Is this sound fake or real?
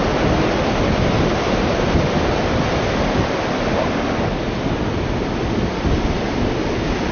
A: real